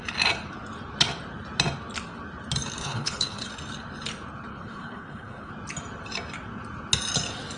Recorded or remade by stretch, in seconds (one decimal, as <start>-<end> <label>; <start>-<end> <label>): 0.0-2.8 recorded; 2.8-3.5 remade; 3.5-4.5 recorded; 4.5-5.5 remade; 5.5-7.6 recorded